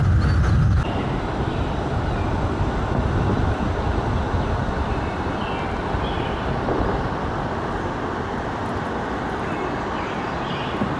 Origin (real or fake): real